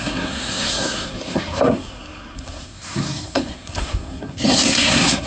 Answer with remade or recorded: remade